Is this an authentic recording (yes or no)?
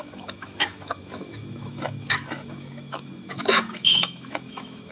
no